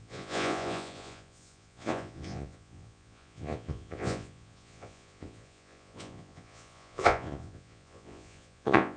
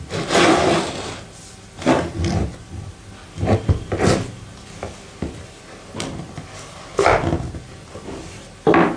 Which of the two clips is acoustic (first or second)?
second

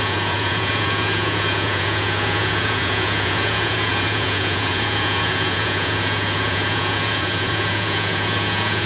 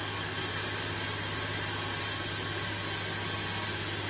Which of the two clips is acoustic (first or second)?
second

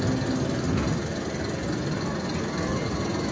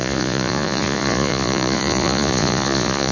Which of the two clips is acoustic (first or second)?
first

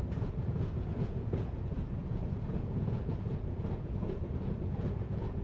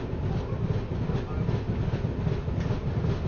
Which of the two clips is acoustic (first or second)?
second